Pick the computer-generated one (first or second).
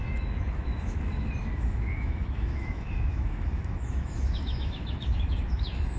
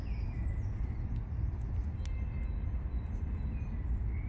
first